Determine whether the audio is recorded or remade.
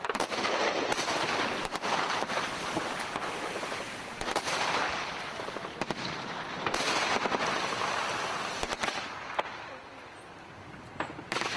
recorded